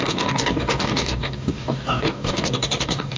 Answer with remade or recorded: remade